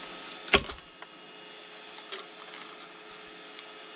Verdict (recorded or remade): recorded